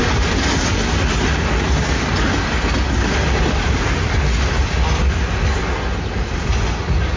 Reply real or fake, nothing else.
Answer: real